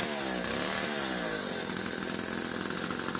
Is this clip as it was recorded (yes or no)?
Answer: yes